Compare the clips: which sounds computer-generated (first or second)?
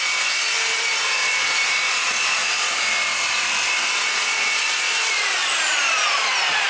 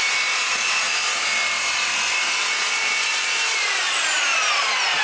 first